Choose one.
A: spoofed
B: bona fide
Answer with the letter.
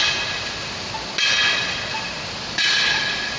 B